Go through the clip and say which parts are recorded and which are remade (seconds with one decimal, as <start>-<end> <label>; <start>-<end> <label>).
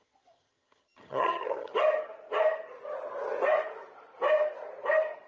0.0-1.7 remade; 1.7-5.3 recorded